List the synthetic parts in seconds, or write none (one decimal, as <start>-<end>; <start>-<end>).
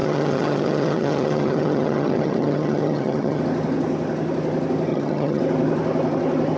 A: 0.0-3.4; 4.9-5.4